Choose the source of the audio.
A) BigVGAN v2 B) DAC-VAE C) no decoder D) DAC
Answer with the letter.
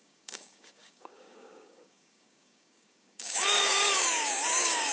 D